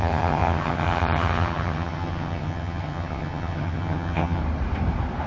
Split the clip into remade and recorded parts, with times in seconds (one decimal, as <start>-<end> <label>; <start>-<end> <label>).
0.0-4.4 remade; 4.4-5.3 recorded

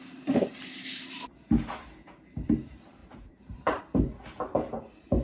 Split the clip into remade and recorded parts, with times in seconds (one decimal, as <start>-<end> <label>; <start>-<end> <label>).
0.0-3.0 recorded; 3.0-3.8 remade; 3.8-5.2 recorded

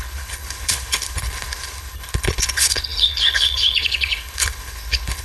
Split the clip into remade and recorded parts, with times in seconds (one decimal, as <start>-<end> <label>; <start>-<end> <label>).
0.0-5.2 remade